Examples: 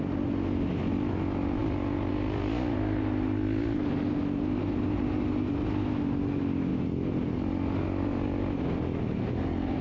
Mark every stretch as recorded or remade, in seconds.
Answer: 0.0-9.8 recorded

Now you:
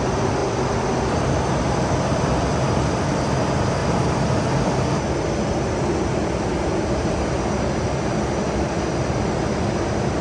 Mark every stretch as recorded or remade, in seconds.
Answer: 0.0-0.4 remade; 0.4-1.6 recorded; 1.6-3.8 remade; 3.8-8.3 recorded; 8.3-10.2 remade

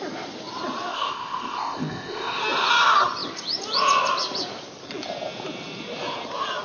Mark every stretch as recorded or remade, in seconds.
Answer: 0.0-0.9 recorded; 0.9-2.4 remade; 2.4-6.6 recorded

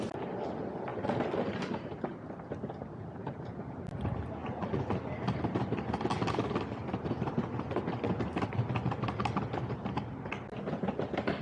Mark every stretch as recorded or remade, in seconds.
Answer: 0.0-4.4 recorded; 4.4-5.1 remade; 5.1-11.4 recorded

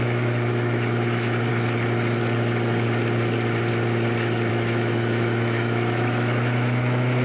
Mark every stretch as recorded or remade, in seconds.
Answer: 0.0-1.5 remade; 1.5-4.5 recorded; 4.5-7.2 remade

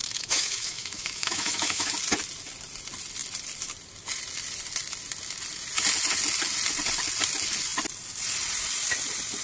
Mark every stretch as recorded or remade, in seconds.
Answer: 0.0-1.9 remade; 1.9-9.4 recorded

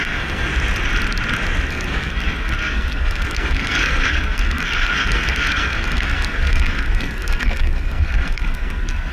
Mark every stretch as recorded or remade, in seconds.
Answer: 0.0-0.5 remade; 0.5-1.7 recorded; 1.7-9.1 remade

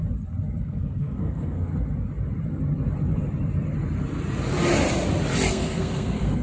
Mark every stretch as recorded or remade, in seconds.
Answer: 0.0-0.6 recorded; 0.6-1.7 remade; 1.7-5.5 recorded; 5.5-6.4 remade